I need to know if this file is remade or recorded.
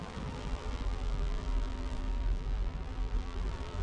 remade